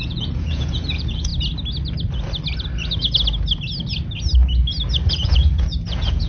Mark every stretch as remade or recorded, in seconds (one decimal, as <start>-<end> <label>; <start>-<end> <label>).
0.0-1.3 remade; 1.3-5.1 recorded; 5.1-6.3 remade